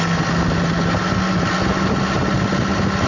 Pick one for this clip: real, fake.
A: real